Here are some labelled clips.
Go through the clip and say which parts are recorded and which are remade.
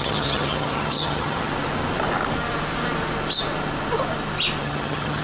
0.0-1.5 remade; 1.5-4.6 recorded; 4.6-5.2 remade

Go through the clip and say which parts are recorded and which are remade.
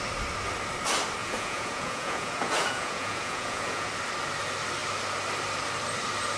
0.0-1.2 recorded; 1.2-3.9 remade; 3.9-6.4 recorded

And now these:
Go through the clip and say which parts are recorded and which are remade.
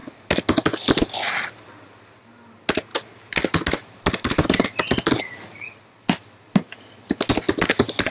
0.0-8.1 recorded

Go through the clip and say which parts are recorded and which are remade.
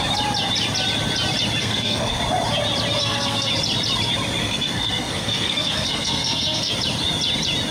0.0-1.6 recorded; 1.6-2.2 remade; 2.2-3.0 recorded; 3.0-3.5 remade; 3.5-4.4 recorded; 4.4-6.7 remade; 6.7-7.7 recorded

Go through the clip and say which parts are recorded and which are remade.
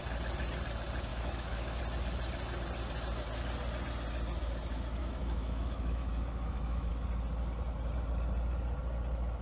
0.0-1.1 recorded; 1.1-1.8 remade; 1.8-5.0 recorded; 5.0-6.9 remade; 6.9-9.4 recorded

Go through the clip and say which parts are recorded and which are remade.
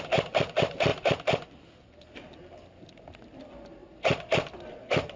0.0-3.8 recorded; 3.8-5.2 remade